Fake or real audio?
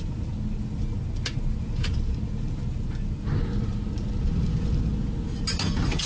real